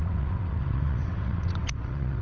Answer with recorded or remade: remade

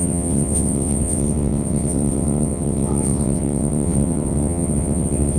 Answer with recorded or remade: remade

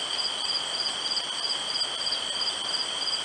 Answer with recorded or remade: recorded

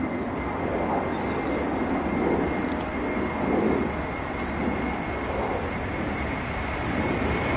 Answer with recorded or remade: recorded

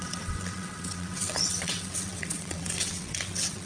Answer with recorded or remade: remade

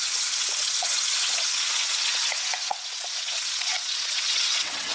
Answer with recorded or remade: remade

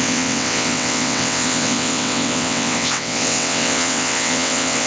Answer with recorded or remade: remade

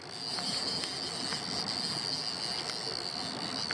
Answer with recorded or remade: recorded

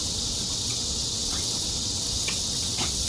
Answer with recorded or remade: remade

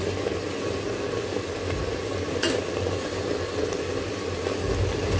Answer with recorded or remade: recorded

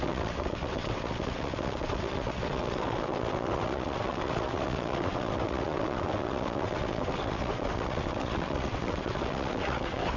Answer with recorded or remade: remade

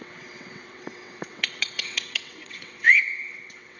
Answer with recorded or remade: remade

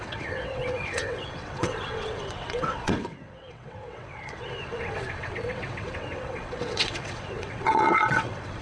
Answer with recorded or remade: remade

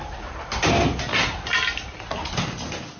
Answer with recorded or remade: recorded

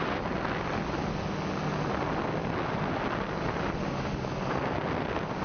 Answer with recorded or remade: recorded